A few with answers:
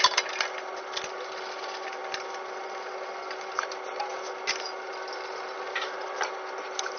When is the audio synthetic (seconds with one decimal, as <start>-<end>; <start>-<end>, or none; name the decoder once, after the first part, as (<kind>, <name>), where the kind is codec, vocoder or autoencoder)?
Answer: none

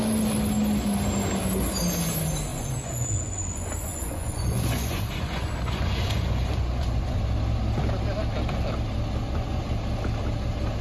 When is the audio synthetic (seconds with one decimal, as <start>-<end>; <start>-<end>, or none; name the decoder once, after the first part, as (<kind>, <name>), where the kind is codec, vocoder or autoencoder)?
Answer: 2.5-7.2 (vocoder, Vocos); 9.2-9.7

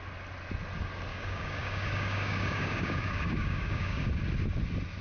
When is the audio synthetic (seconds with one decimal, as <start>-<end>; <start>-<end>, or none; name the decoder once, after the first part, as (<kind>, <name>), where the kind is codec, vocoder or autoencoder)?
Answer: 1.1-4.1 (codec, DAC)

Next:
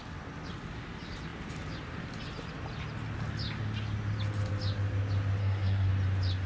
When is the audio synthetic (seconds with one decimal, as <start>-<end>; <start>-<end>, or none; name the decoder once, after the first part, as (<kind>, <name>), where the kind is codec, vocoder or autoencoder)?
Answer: 5.4-5.9 (codec, SNAC)

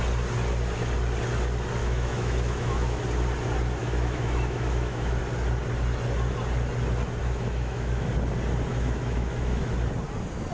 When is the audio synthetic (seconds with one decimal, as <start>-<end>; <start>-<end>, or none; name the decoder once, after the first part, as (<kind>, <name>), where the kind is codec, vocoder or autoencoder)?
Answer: 1.8-3.0 (autoencoder, DAC-VAE); 3.8-5.2; 7.2-8.1; 8.7-9.6

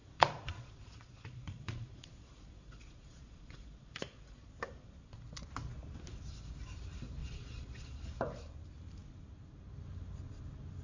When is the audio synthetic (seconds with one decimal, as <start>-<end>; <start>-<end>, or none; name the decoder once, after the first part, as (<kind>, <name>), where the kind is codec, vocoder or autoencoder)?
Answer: 0.0-4.5 (vocoder, Vocos); 7.2-8.0